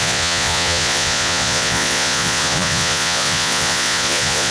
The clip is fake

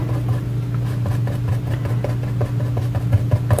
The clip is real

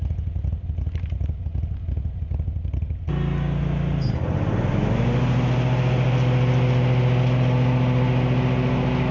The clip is real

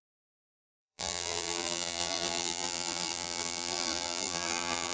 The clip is fake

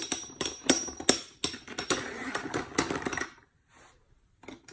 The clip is real